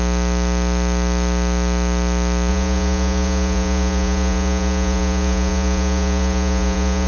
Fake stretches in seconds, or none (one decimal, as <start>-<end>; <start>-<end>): 2.5-7.1